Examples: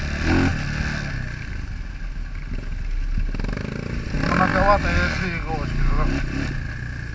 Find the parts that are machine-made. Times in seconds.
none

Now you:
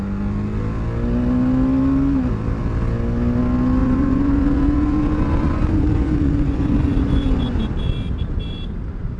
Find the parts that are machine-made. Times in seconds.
3.8-7.7 (vocoder, Vocos)

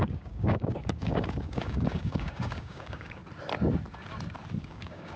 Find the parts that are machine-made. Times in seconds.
0.0-3.2 (codec, DAC); 4.6-5.2

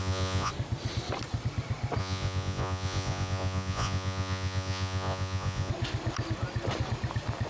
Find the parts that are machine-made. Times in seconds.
0.0-0.5 (vocoder, Vocos); 2.0-5.7

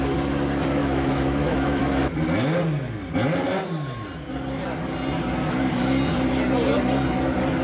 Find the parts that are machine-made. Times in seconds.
0.8-1.8 (autoencoder, DAC-VAE)

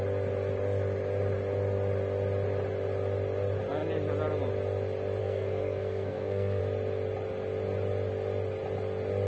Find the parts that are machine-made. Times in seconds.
5.2-6.6 (codec, SNAC)